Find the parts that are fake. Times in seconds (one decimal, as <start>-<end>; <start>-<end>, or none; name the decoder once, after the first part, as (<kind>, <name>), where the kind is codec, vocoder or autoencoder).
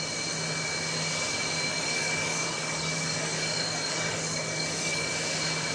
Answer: 1.7-5.1 (codec, DAC)